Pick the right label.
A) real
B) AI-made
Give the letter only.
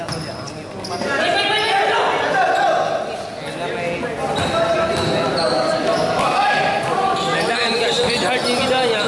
A